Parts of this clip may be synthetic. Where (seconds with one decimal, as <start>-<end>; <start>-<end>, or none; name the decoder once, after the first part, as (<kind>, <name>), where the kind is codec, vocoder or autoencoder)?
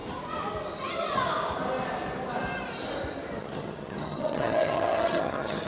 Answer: 3.4-5.7 (vocoder, HiFi-GAN)